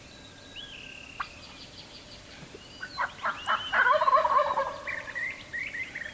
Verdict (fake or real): fake